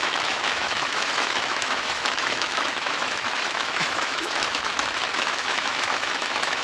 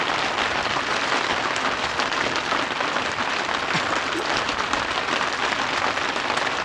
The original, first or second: second